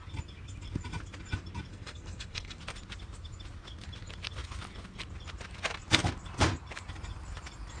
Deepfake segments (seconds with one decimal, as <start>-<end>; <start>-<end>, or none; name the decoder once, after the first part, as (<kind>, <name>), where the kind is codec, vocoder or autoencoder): 1.7-2.6 (codec, SNAC)